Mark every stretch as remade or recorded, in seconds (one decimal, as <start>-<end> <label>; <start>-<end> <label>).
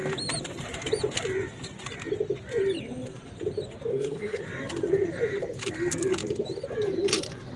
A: 0.0-3.9 recorded; 3.9-4.4 remade; 4.4-7.6 recorded